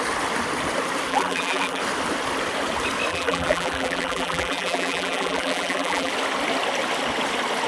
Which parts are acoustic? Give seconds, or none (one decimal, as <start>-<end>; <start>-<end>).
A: 0.0-1.1; 1.8-3.1; 6.1-7.7